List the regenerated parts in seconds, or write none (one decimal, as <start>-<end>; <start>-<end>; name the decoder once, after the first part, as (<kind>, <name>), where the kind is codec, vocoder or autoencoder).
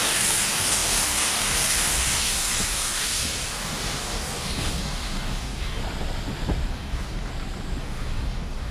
0.0-5.8 (codec, DAC); 6.7-7.3; 7.8-8.7